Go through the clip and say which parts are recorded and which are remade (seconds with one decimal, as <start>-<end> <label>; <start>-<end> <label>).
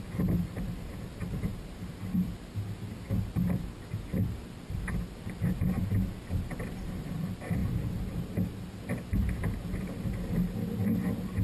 0.0-0.5 recorded; 0.5-1.0 remade; 1.0-1.5 recorded; 1.5-2.3 remade; 2.3-11.4 recorded